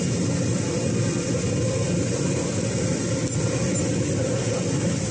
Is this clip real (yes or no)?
yes